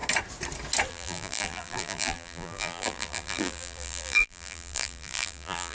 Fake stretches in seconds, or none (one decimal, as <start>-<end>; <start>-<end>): 0.9-5.7